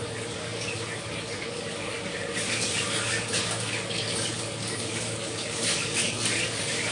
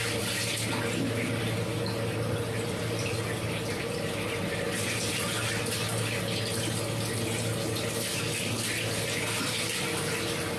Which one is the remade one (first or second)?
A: first